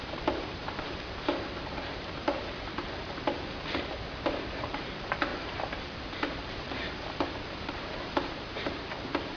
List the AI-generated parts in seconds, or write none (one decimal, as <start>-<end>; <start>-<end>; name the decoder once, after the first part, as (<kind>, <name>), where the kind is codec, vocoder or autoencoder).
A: 0.0-9.4 (vocoder, BigVGAN v2)